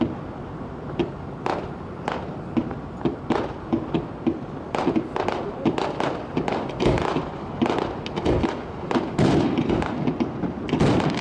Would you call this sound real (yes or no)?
no